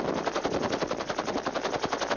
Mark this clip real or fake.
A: real